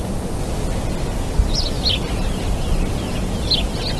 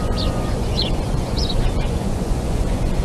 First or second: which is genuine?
first